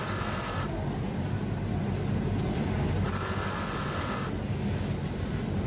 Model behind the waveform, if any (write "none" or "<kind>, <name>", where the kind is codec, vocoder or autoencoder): none